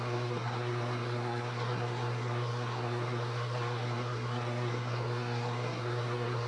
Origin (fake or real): fake